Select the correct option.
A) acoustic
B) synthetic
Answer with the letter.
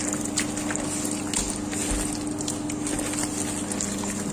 A